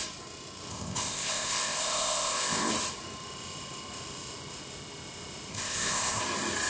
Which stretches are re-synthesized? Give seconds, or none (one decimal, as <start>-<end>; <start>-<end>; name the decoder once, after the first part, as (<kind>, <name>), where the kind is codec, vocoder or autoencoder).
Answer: 0.7-2.7 (codec, ZipCodec); 5.5-6.2